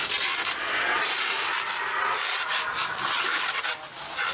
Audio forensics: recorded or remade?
recorded